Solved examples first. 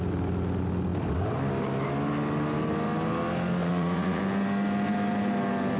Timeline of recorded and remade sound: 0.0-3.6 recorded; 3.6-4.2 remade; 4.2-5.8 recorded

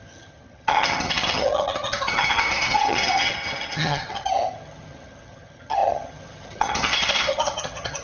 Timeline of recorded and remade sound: 0.0-8.0 remade

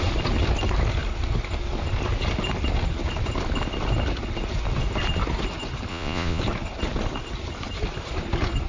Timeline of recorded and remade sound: 0.0-5.9 recorded; 5.9-6.4 remade; 6.4-8.7 recorded

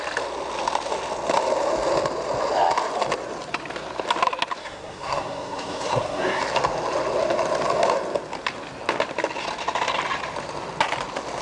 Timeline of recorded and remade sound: 0.0-4.6 recorded; 4.6-6.4 remade; 6.4-11.4 recorded

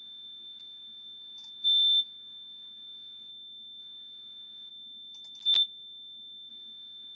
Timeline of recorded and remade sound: 0.0-3.3 remade; 3.3-3.8 recorded; 3.8-4.7 remade; 4.7-6.5 recorded; 6.5-7.1 remade